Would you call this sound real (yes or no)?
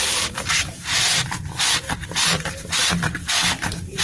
no